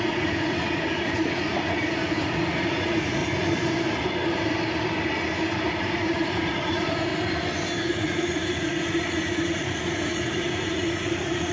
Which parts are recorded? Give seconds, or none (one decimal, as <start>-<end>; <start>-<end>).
3.2-5.8; 7.1-7.8